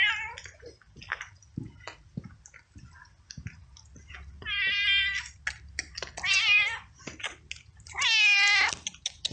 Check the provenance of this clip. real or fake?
real